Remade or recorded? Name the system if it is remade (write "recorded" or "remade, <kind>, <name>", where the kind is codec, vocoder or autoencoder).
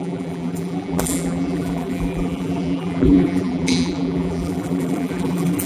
remade, vocoder, BigVGAN v2